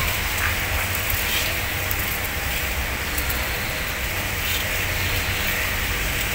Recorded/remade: recorded